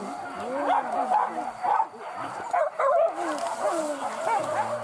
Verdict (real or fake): real